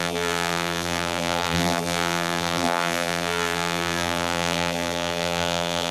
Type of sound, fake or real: fake